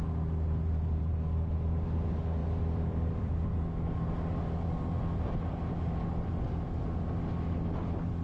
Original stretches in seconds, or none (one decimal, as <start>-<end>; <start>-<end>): 0.0-2.4; 3.3-8.2